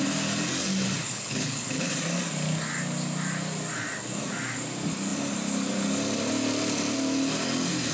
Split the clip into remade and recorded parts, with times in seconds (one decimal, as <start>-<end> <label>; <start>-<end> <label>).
0.0-1.0 recorded; 1.0-1.9 remade; 1.9-7.9 recorded

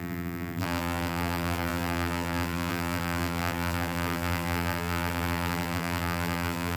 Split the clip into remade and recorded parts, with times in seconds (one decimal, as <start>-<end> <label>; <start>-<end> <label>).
0.0-6.8 remade

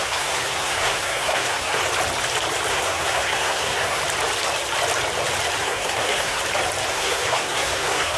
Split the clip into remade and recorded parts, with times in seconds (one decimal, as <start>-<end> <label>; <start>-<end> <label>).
0.0-1.8 remade; 1.8-2.7 recorded; 2.7-4.0 remade; 4.0-5.6 recorded; 5.6-6.4 remade; 6.4-6.9 recorded; 6.9-8.2 remade